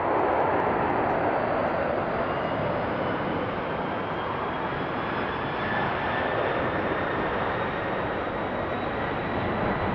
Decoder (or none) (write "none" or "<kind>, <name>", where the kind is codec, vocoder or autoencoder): none